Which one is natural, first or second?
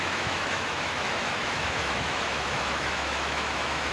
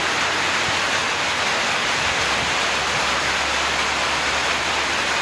second